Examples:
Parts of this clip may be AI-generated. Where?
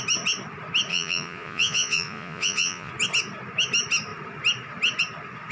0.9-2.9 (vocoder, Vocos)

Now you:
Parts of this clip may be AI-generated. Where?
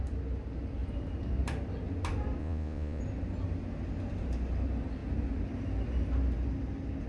2.4-3.0 (vocoder, Vocos)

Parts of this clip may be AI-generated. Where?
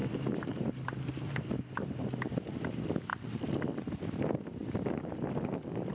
0.0-1.5 (vocoder, BigVGAN v2)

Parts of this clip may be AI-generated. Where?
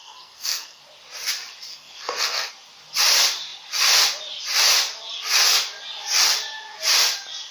0.0-0.8 (codec, SNAC); 1.7-2.5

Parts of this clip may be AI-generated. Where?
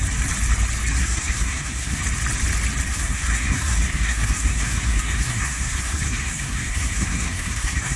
1.0-2.0 (codec, SNAC); 2.9-8.0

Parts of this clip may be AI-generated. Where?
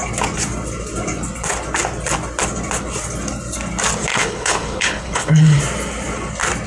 4.1-5.6 (codec, HILCodec)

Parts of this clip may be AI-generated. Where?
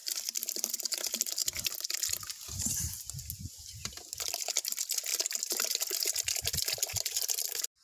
0.0-0.8 (vocoder, BigVGAN v2)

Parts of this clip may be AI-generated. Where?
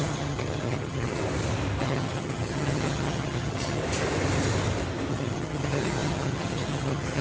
0.0-1.2 (vocoder, HiFi-GAN); 1.8-3.8; 5.1-7.2